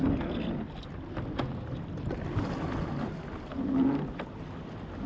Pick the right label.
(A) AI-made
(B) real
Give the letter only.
B